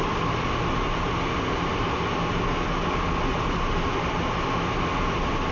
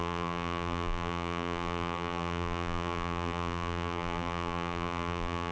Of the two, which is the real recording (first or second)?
first